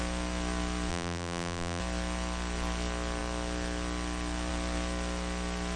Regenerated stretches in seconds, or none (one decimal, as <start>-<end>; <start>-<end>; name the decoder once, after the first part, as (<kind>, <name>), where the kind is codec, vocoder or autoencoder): 0.9-1.8 (vocoder, BigVGAN v2)